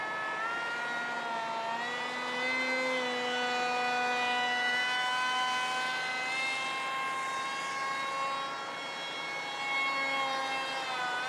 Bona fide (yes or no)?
yes